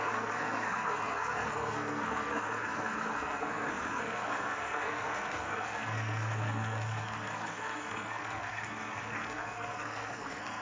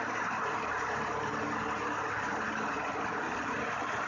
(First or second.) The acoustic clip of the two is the second